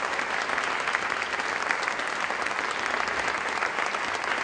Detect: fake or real real